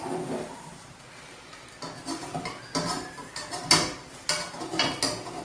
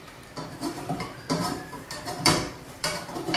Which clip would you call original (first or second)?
first